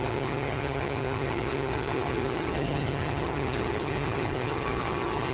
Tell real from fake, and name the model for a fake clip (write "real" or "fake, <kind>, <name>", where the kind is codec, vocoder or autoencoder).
fake, vocoder, HiFi-GAN